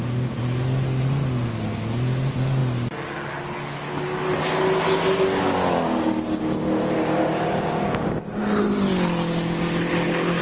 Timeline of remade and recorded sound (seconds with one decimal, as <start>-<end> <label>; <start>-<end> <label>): 0.0-10.4 recorded